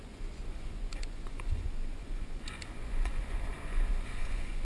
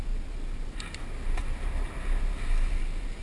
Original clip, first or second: second